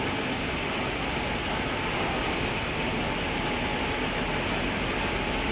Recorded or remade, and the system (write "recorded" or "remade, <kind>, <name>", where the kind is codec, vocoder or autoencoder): recorded